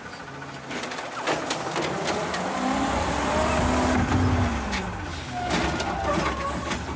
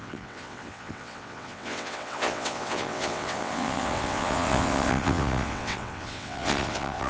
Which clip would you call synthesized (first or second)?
second